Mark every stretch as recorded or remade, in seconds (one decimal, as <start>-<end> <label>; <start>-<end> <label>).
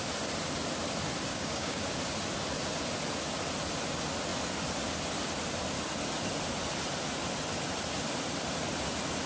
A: 0.0-1.3 recorded; 1.3-1.8 remade; 1.8-9.3 recorded